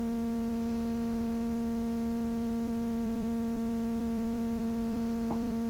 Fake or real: fake